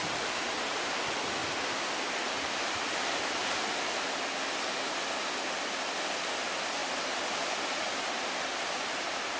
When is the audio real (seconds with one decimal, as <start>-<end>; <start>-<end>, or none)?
0.0-9.4